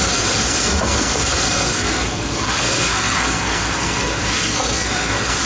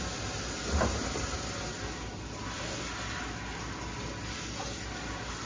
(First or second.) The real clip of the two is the second